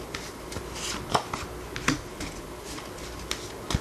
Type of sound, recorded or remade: recorded